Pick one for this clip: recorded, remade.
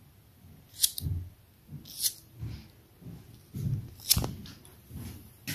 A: recorded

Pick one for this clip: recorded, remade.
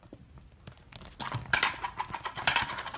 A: recorded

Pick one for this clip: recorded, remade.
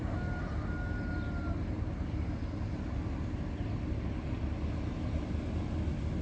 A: recorded